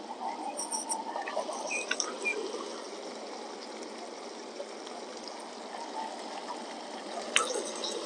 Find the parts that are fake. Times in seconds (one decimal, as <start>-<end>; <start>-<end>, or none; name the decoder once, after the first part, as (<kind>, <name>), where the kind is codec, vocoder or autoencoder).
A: none